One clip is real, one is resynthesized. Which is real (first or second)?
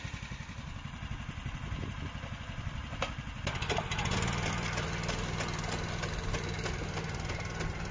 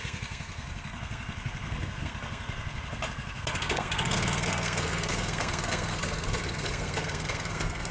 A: first